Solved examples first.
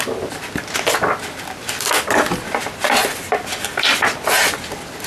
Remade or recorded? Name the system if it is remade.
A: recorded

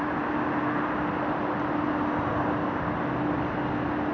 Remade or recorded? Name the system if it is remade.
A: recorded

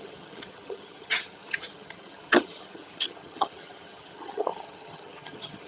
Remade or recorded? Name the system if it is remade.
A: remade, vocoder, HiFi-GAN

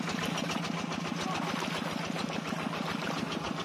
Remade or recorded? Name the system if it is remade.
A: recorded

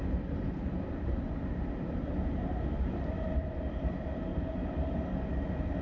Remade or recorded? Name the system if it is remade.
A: recorded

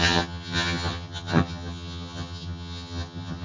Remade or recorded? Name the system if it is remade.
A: remade, vocoder, HiFi-GAN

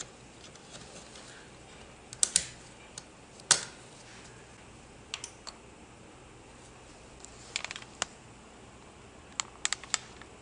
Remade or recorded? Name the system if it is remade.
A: recorded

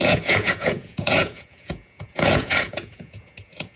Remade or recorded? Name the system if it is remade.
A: remade, vocoder, Vocos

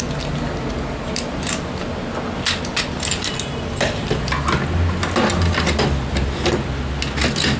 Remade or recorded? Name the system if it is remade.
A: recorded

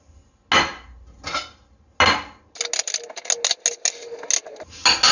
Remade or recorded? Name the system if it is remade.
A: recorded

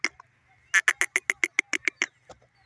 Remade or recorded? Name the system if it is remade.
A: recorded